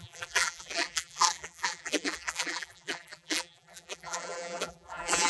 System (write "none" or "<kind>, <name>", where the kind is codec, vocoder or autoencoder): vocoder, BigVGAN v2